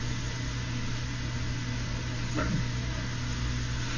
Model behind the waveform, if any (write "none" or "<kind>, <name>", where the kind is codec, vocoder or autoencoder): none